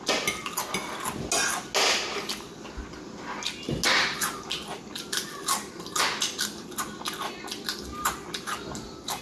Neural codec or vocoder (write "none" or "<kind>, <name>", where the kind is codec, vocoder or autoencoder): none